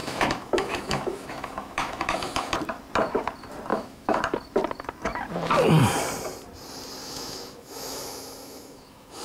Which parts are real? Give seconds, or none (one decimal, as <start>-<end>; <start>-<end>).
2.5-3.7; 4.2-7.0